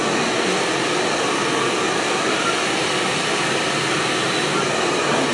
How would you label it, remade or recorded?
recorded